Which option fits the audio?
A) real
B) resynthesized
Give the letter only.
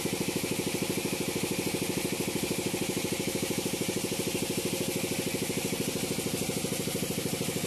A